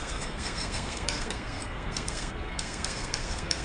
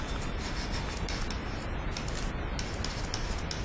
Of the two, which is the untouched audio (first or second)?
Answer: second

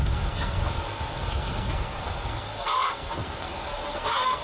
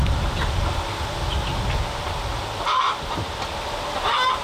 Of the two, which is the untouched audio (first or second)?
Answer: second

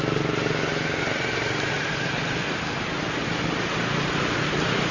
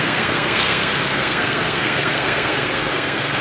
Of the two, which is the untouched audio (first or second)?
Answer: first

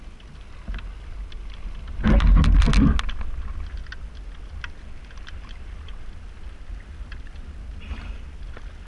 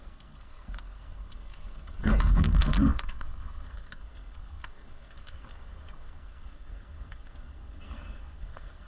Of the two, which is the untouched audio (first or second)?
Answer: first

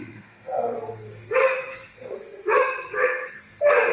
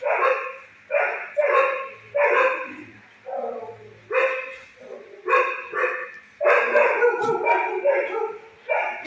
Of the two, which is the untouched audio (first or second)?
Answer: second